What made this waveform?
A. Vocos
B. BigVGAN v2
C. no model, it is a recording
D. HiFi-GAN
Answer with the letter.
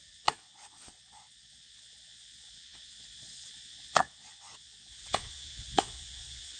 A